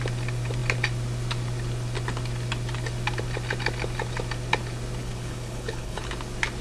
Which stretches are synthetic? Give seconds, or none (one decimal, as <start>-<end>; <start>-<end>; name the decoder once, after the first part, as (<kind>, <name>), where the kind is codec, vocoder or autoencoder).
5.0-6.0 (codec, HILCodec)

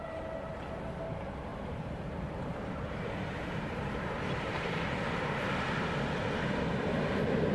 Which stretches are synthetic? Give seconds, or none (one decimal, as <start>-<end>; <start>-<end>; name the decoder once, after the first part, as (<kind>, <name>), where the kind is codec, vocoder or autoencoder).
1.5-6.0 (vocoder, BigVGAN v2)